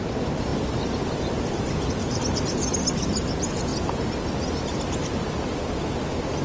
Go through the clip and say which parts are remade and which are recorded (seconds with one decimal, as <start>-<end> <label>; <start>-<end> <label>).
0.0-6.4 recorded